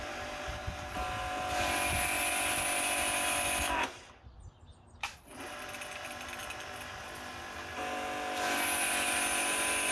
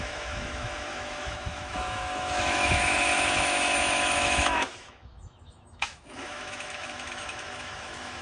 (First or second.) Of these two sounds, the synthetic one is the second